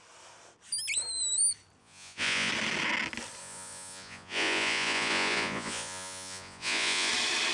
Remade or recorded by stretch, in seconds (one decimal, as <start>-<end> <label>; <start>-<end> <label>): 0.0-1.8 recorded; 1.8-2.5 remade; 2.5-3.4 recorded; 3.4-7.1 remade; 7.1-7.5 recorded